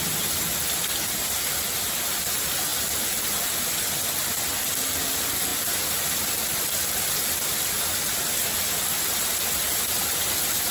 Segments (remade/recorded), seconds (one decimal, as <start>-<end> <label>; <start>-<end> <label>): 0.0-10.7 recorded